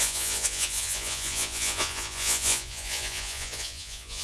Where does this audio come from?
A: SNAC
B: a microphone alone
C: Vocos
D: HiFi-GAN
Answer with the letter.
C